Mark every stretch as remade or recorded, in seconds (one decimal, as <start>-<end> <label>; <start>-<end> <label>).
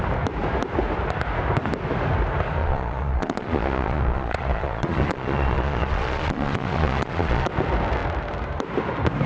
0.0-2.6 recorded; 2.6-7.5 remade; 7.5-9.3 recorded